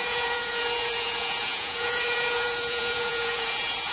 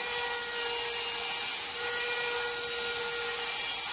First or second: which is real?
second